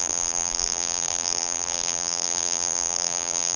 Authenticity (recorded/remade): remade